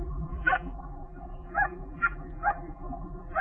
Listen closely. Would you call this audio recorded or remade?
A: remade